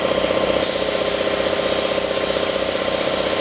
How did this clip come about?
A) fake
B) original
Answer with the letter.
B